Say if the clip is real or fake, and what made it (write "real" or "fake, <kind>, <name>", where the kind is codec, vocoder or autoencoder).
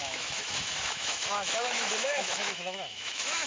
fake, autoencoder, DAC-VAE